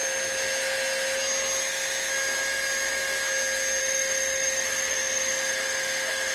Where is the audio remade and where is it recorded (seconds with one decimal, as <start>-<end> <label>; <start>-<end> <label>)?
0.0-3.8 recorded; 3.8-6.3 remade